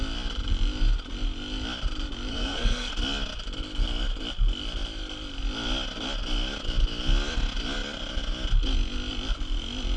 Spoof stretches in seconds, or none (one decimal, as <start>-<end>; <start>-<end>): 2.3-2.9